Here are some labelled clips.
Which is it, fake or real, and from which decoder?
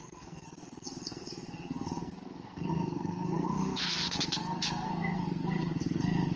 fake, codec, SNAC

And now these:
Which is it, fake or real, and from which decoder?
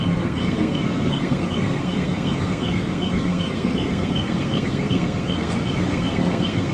fake, codec, SNAC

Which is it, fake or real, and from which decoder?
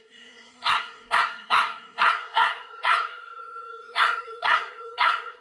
fake, codec, SNAC